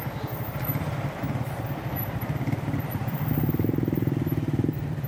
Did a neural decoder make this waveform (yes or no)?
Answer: yes